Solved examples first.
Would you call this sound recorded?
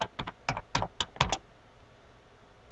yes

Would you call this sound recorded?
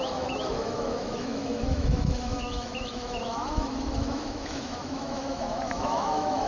no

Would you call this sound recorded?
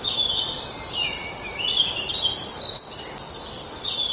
yes